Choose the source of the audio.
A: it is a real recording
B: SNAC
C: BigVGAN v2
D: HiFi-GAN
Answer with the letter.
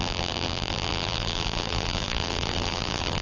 C